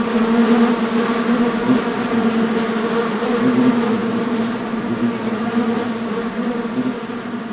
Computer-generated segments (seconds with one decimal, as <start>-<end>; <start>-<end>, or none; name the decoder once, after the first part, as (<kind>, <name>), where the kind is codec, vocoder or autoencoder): none